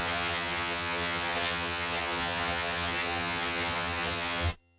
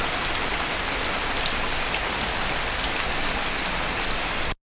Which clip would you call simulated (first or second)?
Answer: first